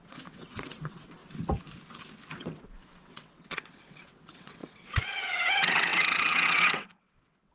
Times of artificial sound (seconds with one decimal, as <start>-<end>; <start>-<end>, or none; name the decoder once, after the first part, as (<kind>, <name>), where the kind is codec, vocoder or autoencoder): 0.0-1.2 (vocoder, WaveNeXt); 2.4-7.5